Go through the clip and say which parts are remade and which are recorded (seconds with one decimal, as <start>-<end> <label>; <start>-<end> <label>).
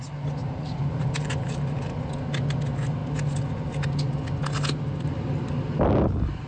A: 0.0-0.4 recorded; 0.4-1.8 remade; 1.8-6.5 recorded